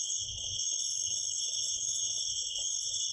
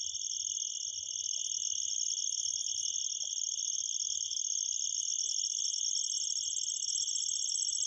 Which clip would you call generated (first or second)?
first